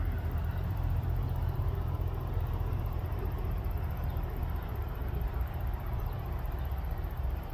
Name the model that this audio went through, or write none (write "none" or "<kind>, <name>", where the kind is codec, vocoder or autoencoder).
vocoder, BigVGAN v2